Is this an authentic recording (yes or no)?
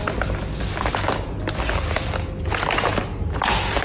yes